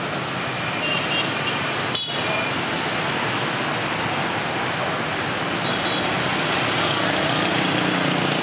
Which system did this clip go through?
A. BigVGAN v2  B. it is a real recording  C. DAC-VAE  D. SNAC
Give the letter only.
B